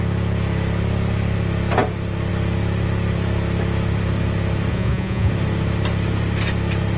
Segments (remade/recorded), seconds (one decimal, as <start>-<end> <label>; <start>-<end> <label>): 0.0-4.7 recorded; 4.7-5.3 remade; 5.3-7.0 recorded